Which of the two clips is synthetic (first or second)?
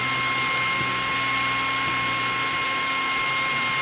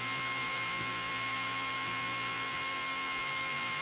second